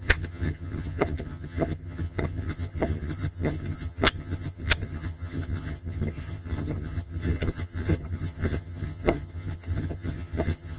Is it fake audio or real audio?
fake